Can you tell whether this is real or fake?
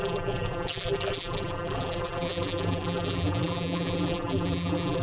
fake